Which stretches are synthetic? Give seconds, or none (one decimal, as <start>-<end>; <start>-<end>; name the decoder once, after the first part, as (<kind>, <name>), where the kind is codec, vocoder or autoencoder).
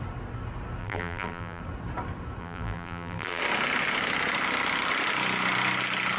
0.8-1.6 (vocoder, BigVGAN v2); 2.4-3.4